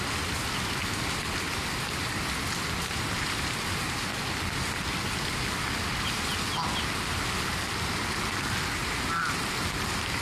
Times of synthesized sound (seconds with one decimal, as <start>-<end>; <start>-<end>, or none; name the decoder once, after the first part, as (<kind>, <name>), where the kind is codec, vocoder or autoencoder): none